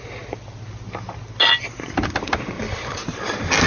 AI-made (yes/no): no